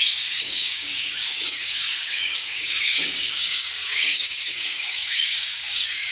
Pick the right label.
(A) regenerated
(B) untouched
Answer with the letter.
A